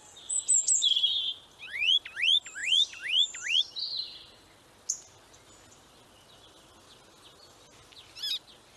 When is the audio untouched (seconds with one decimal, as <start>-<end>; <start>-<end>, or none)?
0.0-8.8